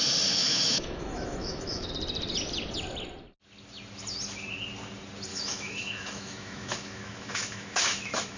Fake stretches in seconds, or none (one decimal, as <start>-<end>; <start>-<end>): 0.4-1.9; 5.3-8.4